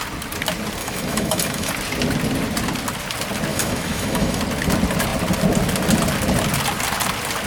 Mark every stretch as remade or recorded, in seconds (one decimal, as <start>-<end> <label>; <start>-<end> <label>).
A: 0.0-0.8 recorded; 0.8-1.7 remade; 1.7-3.5 recorded; 3.5-4.4 remade; 4.4-7.5 recorded